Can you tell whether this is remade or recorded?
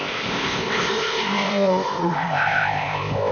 remade